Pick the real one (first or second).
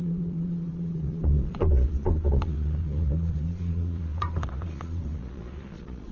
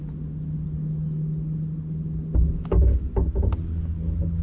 second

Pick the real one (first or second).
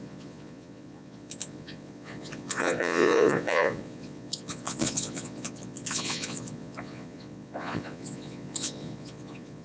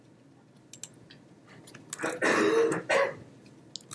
second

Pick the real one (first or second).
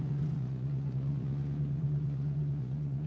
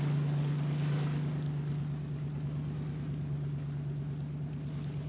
second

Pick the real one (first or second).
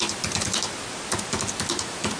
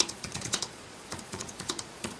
first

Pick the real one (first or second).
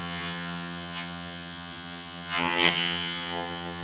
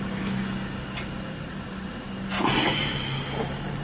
second